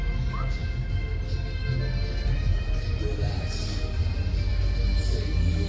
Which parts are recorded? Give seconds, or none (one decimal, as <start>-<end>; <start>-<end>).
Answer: 0.0-5.7